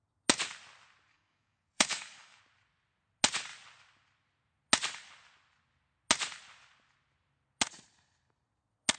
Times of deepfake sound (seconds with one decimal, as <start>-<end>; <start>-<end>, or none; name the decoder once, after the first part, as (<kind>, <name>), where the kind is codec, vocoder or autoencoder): 1.1-2.4 (codec, DAC)